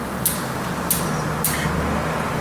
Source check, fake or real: real